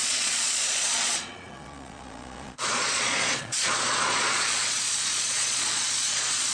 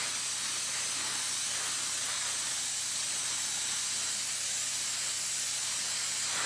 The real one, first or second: second